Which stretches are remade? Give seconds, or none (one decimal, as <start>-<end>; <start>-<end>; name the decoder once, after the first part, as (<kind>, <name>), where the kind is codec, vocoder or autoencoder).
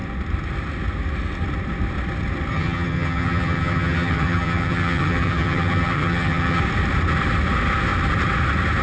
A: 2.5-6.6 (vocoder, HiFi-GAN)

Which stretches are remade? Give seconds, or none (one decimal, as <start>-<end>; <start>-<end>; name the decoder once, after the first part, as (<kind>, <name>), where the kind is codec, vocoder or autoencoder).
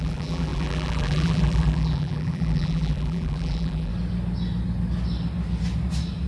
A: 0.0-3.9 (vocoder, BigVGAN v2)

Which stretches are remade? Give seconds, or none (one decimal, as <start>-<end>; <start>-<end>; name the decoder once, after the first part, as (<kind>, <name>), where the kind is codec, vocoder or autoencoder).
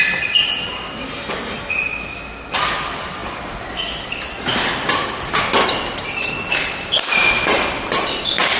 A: none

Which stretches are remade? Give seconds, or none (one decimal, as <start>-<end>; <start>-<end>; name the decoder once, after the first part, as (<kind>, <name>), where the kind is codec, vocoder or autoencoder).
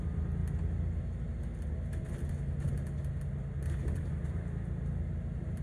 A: none